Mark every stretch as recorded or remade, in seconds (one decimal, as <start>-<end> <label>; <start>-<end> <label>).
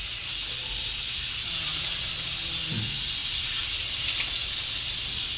0.0-0.6 recorded; 0.6-2.1 remade; 2.1-3.2 recorded; 3.2-3.8 remade; 3.8-5.4 recorded